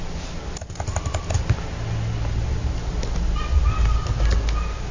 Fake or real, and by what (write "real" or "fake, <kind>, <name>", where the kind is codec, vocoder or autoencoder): real